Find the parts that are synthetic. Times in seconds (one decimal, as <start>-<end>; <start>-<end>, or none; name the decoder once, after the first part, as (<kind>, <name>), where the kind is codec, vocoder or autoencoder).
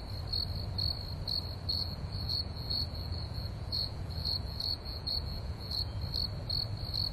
1.7-6.0 (vocoder, Vocos)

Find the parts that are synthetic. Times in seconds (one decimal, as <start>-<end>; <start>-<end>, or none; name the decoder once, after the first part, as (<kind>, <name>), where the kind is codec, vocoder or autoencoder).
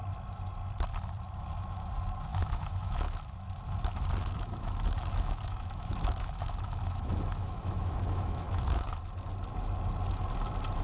2.3-3.2 (autoencoder, DAC-VAE); 4.2-9.0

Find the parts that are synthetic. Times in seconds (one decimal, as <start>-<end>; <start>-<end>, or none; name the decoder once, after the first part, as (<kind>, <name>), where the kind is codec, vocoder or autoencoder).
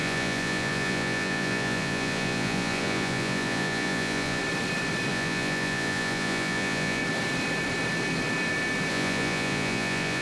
0.0-4.4 (vocoder, Vocos); 5.1-7.0; 8.9-10.2